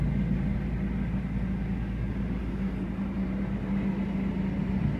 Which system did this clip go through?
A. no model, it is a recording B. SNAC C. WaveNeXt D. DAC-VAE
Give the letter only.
A